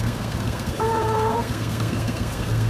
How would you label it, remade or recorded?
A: remade